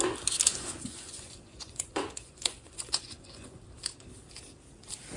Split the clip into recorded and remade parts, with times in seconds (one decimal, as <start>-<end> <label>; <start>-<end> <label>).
0.0-0.5 recorded; 0.5-3.6 remade; 3.6-5.2 recorded